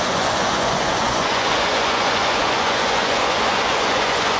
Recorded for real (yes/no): no